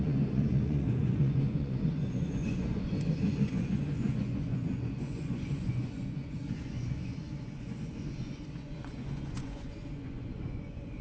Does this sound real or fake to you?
fake